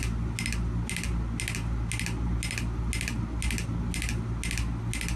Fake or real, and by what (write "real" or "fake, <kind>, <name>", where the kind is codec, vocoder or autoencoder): real